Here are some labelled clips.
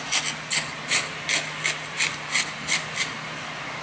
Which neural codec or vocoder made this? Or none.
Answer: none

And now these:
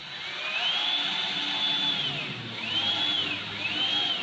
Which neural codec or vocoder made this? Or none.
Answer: none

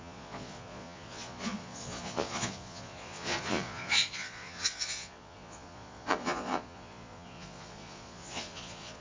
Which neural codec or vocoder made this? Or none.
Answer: vocoder, Vocos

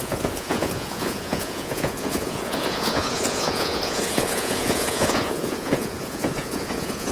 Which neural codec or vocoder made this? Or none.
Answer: vocoder, Vocos